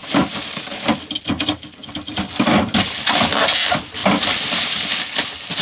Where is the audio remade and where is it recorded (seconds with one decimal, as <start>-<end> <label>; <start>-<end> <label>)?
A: 0.0-5.6 recorded